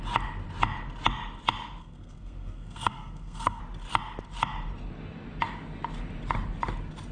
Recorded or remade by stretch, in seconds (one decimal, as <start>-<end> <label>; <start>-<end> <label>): 0.0-1.8 recorded; 1.8-3.6 remade; 3.6-7.1 recorded